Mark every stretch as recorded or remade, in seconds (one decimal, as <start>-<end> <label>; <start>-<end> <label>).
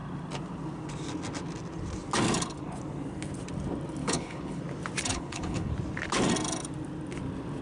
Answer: 0.0-4.0 recorded; 4.0-4.6 remade; 4.6-5.1 recorded; 5.1-5.7 remade; 5.7-7.6 recorded